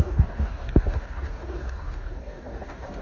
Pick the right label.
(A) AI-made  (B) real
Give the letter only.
A